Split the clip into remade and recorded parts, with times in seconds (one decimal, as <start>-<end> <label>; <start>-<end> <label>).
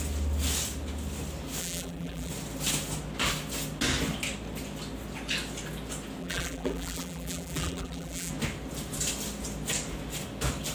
0.0-1.6 recorded; 1.6-2.3 remade; 2.3-6.2 recorded; 6.2-8.3 remade; 8.3-10.7 recorded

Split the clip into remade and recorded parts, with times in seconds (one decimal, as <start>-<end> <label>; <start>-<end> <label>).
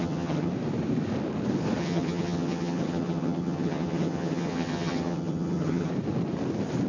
0.0-0.5 remade; 0.5-1.8 recorded; 1.8-5.9 remade; 5.9-6.9 recorded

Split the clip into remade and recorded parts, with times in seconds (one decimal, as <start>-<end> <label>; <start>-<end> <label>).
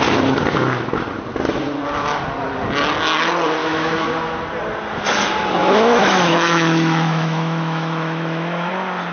0.0-3.6 recorded; 3.6-4.1 remade; 4.1-5.6 recorded; 5.6-8.7 remade; 8.7-9.1 recorded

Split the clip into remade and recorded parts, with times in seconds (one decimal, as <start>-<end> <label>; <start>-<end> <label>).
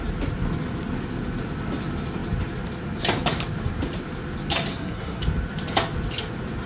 0.0-4.7 recorded; 4.7-5.2 remade; 5.2-6.7 recorded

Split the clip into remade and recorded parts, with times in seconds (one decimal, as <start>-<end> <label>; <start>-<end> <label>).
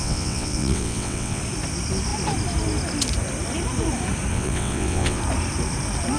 0.0-1.4 remade; 1.4-4.3 recorded; 4.3-5.2 remade; 5.2-6.2 recorded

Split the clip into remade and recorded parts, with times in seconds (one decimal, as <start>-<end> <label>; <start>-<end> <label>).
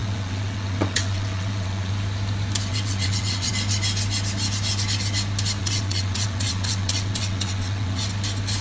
0.0-1.9 remade; 1.9-2.7 recorded; 2.7-3.5 remade; 3.5-5.6 recorded; 5.6-8.0 remade; 8.0-8.6 recorded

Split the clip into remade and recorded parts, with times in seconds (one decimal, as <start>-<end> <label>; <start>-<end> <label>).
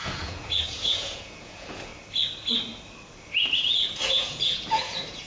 0.0-1.9 remade; 1.9-3.6 recorded; 3.6-5.3 remade